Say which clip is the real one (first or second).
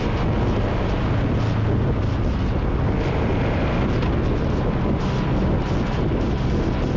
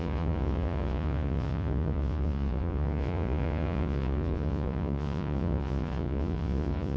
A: first